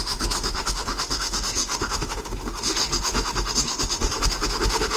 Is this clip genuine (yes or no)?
no